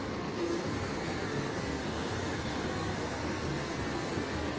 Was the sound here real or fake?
fake